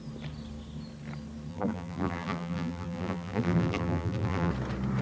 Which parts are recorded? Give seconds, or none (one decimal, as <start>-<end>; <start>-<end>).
0.0-1.5; 4.5-5.0